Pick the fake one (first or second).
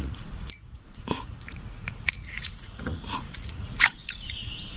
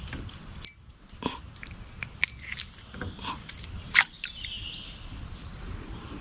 first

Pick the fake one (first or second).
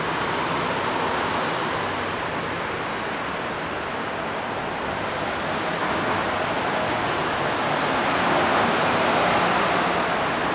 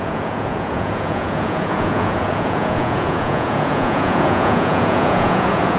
second